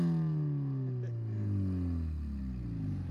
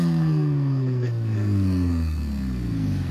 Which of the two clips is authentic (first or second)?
first